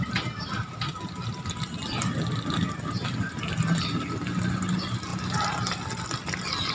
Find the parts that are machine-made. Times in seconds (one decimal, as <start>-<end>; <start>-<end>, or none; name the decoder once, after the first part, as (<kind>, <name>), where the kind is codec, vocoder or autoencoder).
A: none